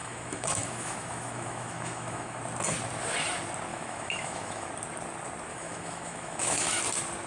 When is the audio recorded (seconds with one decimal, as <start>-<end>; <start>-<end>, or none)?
2.4-3.7; 4.7-5.5; 6.8-7.3